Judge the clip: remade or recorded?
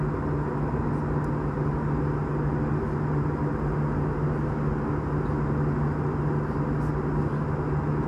recorded